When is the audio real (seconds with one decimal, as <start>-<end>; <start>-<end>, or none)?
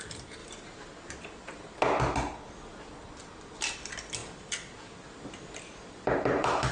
0.4-3.6; 4.2-5.6